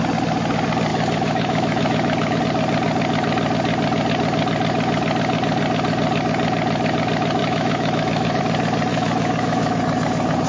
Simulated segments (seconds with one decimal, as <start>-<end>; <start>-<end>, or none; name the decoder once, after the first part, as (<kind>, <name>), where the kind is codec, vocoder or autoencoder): 0.9-2.4 (autoencoder, DAC-VAE); 7.4-8.4; 8.9-9.8